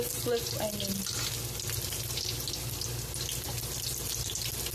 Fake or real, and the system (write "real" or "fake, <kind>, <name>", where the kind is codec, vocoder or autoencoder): real